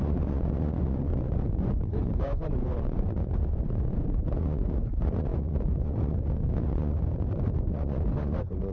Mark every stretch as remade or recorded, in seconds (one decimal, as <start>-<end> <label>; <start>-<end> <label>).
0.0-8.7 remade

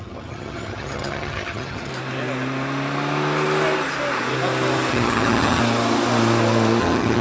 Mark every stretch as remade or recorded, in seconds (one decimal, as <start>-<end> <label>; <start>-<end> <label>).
0.0-1.9 remade; 1.9-4.9 recorded; 4.9-5.6 remade; 5.6-6.8 recorded; 6.8-7.2 remade

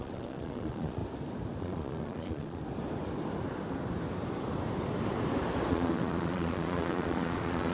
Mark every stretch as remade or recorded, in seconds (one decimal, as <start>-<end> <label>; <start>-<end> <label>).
0.0-1.0 remade; 1.0-1.6 recorded; 1.6-2.6 remade; 2.6-5.7 recorded; 5.7-7.7 remade

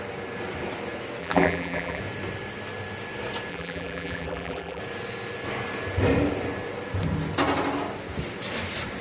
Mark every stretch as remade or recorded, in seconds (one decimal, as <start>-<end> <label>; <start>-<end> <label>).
0.0-1.2 recorded; 1.2-2.0 remade; 2.0-3.5 recorded; 3.5-4.8 remade; 4.8-9.0 recorded

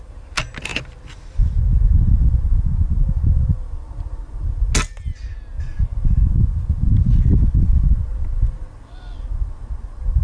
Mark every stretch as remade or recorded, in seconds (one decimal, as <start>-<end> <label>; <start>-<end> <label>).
0.0-10.2 recorded